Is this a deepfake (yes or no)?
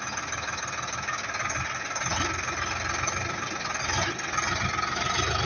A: no